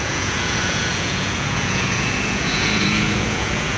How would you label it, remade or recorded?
remade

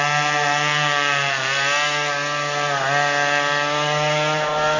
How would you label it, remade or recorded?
recorded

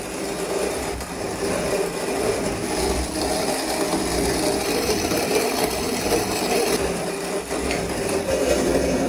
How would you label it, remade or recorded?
recorded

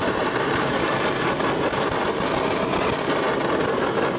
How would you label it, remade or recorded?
remade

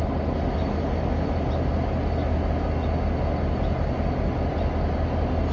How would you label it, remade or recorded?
recorded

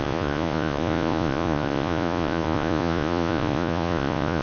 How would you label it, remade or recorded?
remade